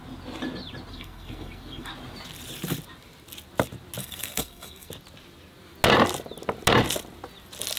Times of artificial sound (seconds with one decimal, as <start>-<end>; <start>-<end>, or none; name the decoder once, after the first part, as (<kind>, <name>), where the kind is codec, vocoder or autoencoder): 0.9-1.9 (codec, SNAC); 4.0-4.9